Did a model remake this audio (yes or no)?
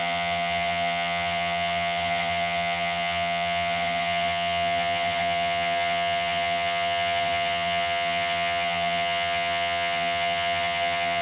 yes